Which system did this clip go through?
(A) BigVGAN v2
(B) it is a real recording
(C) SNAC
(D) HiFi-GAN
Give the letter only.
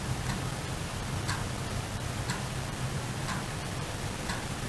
A